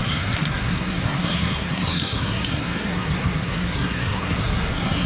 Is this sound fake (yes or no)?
yes